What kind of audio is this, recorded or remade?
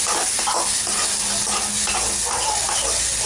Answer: recorded